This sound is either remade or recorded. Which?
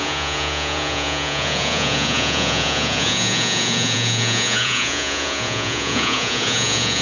remade